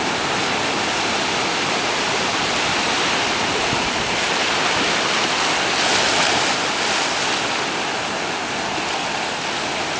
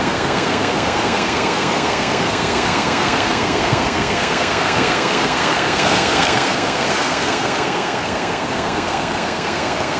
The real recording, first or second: first